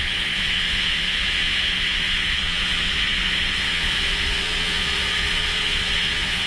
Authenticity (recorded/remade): remade